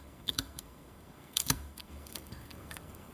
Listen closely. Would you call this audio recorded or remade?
remade